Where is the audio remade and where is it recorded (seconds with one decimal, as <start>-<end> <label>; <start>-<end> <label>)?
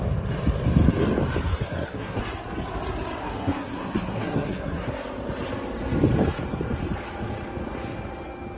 0.0-1.5 recorded; 1.5-2.2 remade; 2.2-3.2 recorded; 3.2-4.9 remade; 4.9-8.6 recorded